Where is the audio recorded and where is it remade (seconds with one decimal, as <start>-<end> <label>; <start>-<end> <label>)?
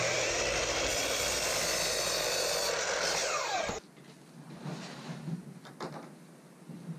0.0-0.9 remade; 0.9-2.6 recorded; 2.6-3.2 remade; 3.2-4.9 recorded; 4.9-7.0 remade